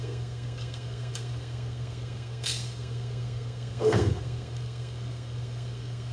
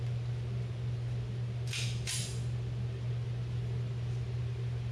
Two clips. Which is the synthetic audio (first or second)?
first